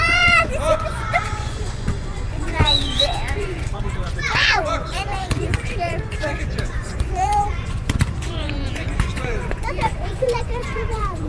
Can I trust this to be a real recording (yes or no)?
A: no